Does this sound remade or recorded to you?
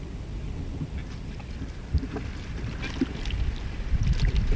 recorded